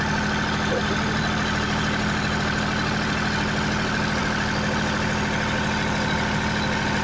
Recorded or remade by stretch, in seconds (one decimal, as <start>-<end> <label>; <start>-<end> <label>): 0.0-7.0 recorded